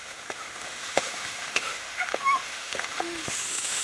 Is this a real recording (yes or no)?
no